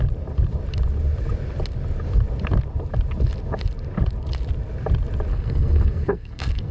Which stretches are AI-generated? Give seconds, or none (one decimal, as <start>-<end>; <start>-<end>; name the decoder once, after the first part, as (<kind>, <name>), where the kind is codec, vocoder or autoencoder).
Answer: 5.3-6.7 (codec, SNAC)